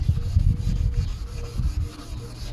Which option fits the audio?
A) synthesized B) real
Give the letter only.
B